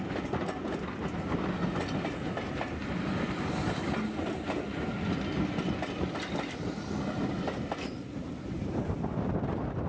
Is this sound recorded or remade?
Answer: recorded